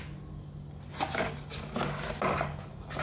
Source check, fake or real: real